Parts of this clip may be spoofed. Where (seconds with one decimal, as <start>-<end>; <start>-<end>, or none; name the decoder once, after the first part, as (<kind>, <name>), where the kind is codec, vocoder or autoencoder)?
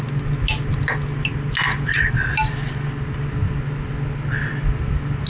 none